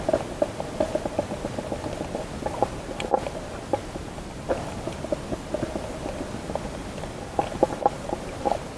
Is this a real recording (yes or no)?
yes